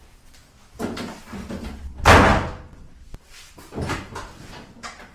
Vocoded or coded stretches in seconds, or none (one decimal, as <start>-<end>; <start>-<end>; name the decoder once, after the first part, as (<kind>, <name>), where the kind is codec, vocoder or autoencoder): none